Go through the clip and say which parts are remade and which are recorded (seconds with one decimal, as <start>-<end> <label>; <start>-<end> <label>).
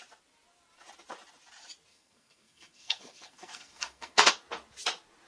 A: 0.0-1.9 recorded; 1.9-4.3 remade; 4.3-5.3 recorded